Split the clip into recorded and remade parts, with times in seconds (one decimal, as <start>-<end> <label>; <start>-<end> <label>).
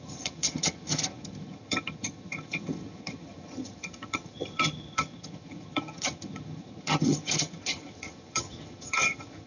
0.0-9.5 remade